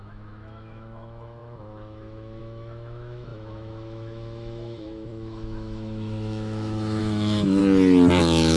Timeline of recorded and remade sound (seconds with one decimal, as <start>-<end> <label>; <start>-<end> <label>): 0.0-7.6 remade; 7.6-8.2 recorded; 8.2-8.6 remade